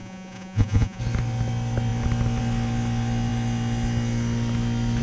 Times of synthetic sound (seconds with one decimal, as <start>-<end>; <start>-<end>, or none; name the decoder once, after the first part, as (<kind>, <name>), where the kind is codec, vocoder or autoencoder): 0.0-1.0 (vocoder, Vocos)

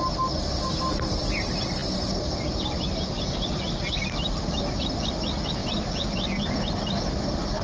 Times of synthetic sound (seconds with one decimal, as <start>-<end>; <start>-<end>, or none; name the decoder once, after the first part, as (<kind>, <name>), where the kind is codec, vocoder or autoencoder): none

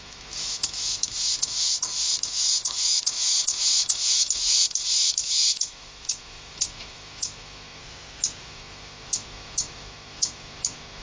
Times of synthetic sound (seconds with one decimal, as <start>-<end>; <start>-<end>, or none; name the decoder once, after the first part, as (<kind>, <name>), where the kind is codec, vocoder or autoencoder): 0.0-7.8 (autoencoder, DAC-VAE); 8.4-11.0